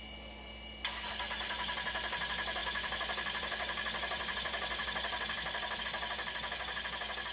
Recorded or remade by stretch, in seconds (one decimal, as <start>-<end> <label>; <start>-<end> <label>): 0.0-2.6 recorded; 2.6-5.8 remade; 5.8-7.3 recorded